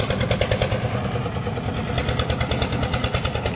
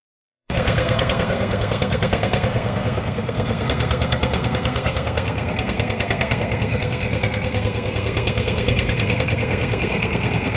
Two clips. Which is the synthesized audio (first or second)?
second